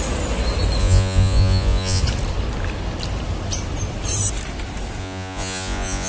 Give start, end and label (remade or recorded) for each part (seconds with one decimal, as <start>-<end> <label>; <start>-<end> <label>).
0.0-0.8 recorded; 0.8-2.0 remade; 2.0-5.0 recorded; 5.0-6.1 remade